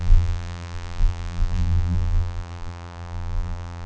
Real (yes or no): no